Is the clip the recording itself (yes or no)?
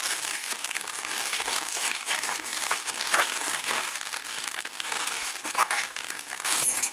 no